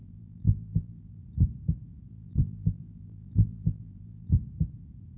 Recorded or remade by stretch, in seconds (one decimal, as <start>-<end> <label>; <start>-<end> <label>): 0.0-1.2 remade; 1.2-2.1 recorded; 2.1-4.3 remade; 4.3-5.2 recorded